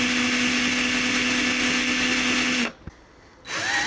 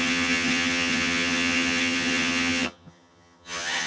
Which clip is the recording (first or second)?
first